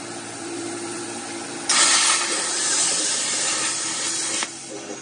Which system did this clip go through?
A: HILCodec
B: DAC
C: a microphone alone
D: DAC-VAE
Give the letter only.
C